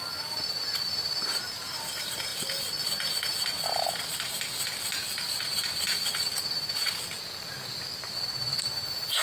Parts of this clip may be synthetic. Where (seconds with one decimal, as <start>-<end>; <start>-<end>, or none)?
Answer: none